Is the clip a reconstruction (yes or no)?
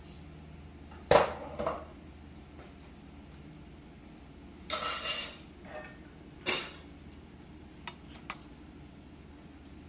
no